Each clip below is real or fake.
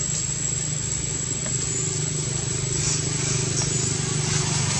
real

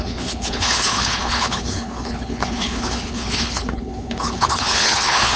fake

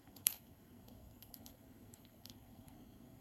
fake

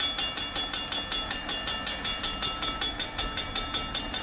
real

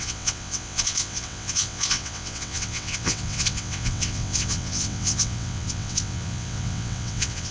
fake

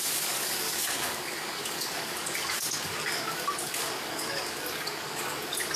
fake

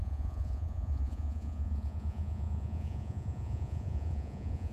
fake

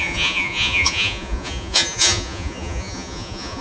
fake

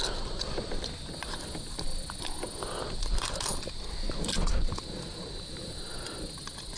real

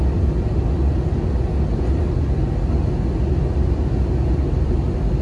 real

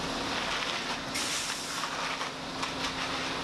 real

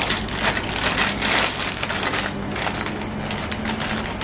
real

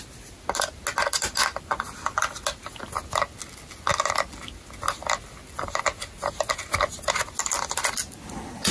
real